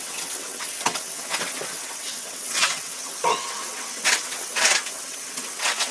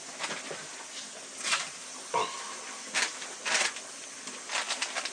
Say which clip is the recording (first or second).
second